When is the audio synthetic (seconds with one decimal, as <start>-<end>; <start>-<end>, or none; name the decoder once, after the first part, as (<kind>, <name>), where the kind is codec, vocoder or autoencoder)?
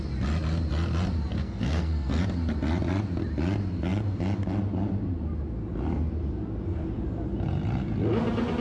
1.3-2.2 (codec, SNAC)